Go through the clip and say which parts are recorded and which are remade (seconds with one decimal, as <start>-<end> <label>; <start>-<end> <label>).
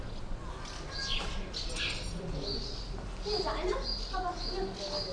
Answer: 0.0-5.1 recorded